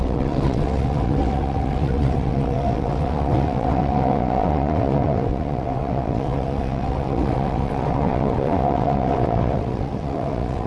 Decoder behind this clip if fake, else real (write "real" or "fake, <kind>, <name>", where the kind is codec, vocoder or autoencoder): fake, vocoder, WaveNeXt